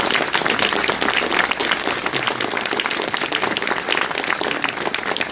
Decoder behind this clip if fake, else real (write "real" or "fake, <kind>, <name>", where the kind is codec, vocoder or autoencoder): real